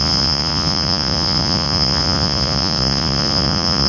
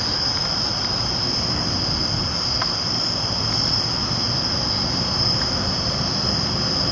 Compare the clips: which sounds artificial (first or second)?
first